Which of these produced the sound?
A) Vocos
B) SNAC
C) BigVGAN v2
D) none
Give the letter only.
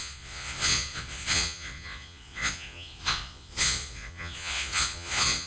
A